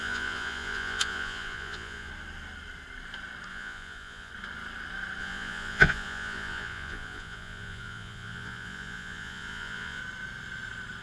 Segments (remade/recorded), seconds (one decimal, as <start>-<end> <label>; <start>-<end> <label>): 0.0-2.1 remade; 2.1-3.5 recorded; 3.5-4.3 remade; 4.3-5.2 recorded; 5.2-10.0 remade; 10.0-11.0 recorded